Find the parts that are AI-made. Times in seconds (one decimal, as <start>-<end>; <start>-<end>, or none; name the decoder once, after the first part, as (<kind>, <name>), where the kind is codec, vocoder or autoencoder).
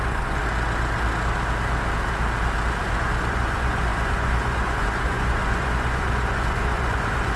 0.0-0.4 (vocoder, Vocos); 2.8-7.4